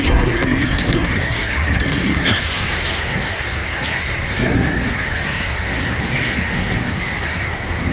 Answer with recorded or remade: remade